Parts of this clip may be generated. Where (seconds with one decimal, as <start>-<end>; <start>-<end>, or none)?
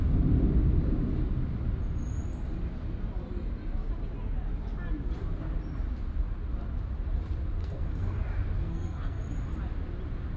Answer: 7.6-8.2; 8.6-9.2